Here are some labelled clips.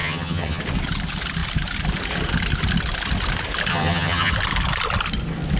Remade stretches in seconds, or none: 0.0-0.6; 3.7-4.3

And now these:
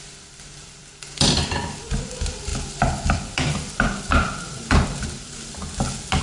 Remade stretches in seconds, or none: 0.0-6.2

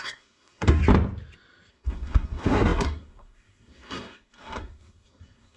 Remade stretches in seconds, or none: 0.0-0.8; 1.7-5.6

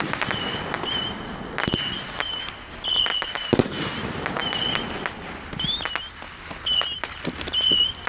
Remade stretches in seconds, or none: none

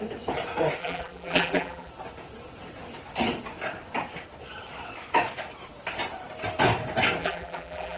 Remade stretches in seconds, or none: 0.8-1.9; 7.2-8.0

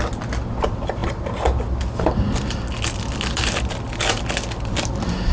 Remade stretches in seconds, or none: none

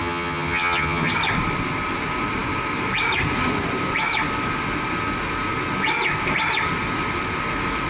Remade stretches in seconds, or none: 0.0-1.1

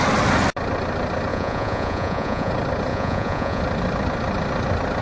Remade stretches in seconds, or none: 1.3-2.5; 2.9-3.6